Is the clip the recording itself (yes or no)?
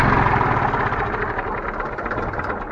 yes